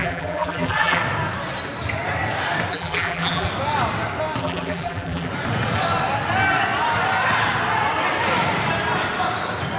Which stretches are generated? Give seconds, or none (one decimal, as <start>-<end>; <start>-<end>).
0.0-1.0; 2.7-3.5; 4.4-5.3